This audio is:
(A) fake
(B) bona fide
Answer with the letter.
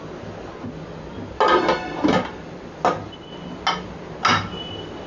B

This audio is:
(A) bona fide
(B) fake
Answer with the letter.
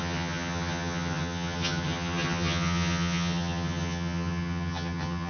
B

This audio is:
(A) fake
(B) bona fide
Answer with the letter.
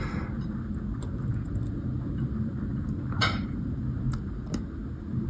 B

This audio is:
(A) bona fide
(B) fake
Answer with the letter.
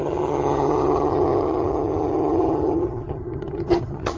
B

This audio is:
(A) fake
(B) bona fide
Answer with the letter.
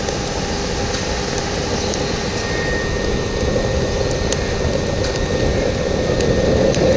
B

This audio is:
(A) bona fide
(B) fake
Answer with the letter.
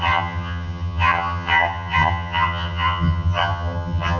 B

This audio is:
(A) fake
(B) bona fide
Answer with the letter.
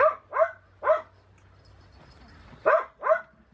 B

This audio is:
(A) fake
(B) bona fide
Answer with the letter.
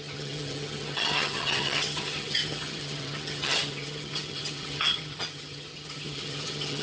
A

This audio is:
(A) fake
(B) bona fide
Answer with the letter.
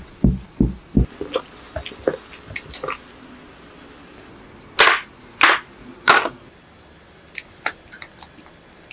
B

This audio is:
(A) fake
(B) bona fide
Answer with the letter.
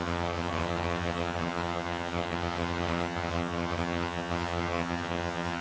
A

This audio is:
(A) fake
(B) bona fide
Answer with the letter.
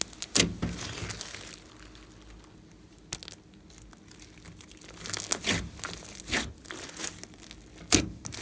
B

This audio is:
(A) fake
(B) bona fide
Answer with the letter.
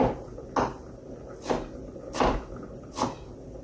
B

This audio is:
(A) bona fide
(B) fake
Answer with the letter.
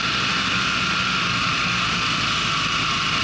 A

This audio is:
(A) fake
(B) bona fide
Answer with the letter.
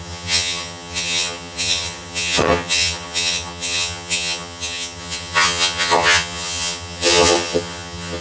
A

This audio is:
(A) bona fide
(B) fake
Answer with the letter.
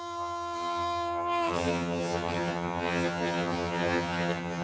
B